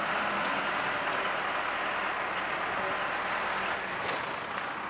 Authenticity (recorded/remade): recorded